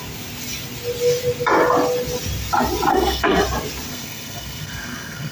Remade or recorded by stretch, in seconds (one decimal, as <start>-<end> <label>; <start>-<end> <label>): 0.0-2.9 recorded; 2.9-3.4 remade; 3.4-3.9 recorded; 3.9-5.3 remade